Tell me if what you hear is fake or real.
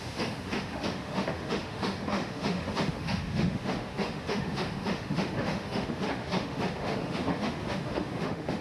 fake